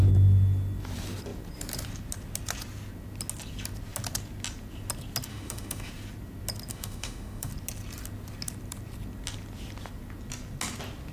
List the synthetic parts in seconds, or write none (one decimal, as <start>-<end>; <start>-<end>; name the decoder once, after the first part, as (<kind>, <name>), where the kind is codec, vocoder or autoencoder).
5.3-5.9 (autoencoder, DAC-VAE); 6.7-7.5